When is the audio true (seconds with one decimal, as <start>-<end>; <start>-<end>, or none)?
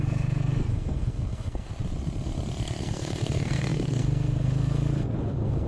1.7-2.8